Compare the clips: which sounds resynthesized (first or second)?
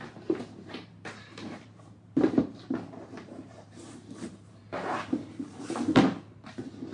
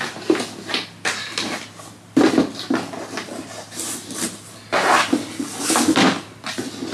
first